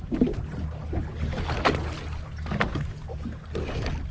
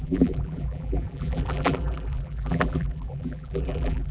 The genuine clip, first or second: first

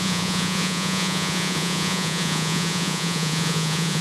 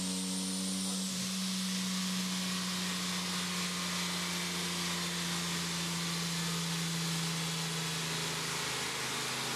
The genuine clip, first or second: second